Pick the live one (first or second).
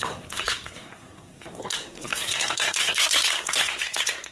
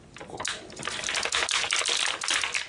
second